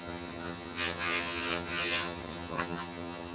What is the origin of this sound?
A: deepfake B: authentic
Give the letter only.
A